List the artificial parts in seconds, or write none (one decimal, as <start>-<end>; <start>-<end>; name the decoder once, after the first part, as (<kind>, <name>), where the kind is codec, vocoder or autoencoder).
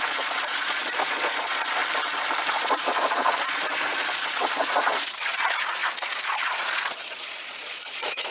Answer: 0.0-1.8 (vocoder, Vocos); 2.5-8.3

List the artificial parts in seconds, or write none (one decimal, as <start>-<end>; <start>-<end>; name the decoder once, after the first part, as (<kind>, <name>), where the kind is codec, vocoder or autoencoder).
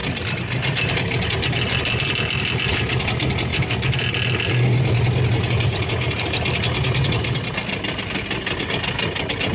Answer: none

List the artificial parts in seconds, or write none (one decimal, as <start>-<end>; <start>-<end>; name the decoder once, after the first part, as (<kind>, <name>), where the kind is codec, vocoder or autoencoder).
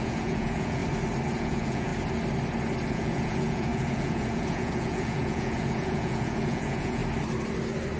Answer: 0.0-0.8 (vocoder, Vocos); 1.3-1.9; 2.9-7.0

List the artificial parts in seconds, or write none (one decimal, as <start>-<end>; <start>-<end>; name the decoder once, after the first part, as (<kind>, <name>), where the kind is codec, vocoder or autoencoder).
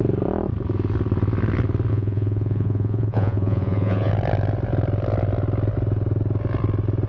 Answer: 1.9-4.1 (vocoder, Vocos)